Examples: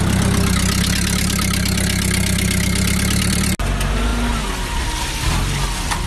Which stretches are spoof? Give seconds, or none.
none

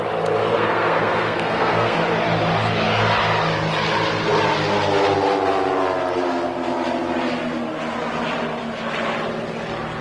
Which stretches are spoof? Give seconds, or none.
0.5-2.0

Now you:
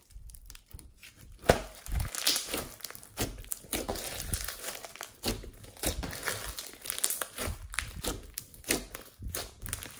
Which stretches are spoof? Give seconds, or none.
none

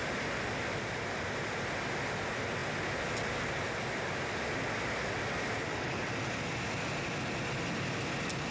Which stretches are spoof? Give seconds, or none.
none

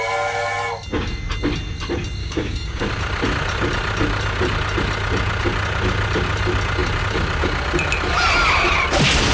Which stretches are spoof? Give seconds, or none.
2.2-2.8

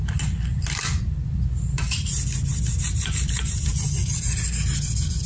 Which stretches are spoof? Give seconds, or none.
0.5-3.7